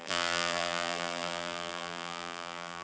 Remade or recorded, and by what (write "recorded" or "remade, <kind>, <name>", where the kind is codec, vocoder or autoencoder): remade, vocoder, BigVGAN v2